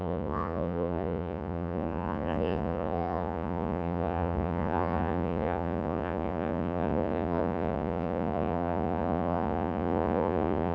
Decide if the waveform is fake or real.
fake